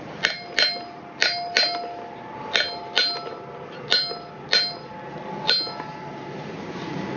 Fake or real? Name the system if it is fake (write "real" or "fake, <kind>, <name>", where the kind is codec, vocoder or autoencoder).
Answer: real